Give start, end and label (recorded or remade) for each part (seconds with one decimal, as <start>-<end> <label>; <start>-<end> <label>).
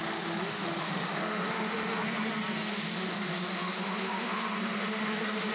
0.0-2.0 remade; 2.0-2.7 recorded; 2.7-5.5 remade